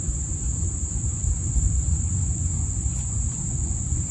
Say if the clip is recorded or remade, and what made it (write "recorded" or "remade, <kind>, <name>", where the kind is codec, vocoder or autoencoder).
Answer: remade, vocoder, Vocos